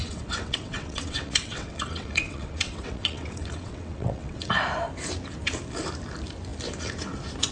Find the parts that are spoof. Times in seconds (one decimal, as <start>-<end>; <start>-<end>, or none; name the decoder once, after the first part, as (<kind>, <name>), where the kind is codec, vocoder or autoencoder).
0.0-4.5 (vocoder, WaveNeXt)